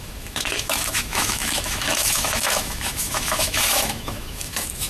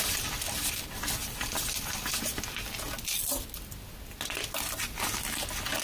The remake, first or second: first